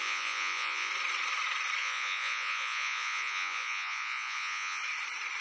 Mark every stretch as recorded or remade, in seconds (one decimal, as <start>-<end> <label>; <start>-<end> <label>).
0.0-0.9 remade; 0.9-1.8 recorded; 1.8-4.8 remade; 4.8-5.4 recorded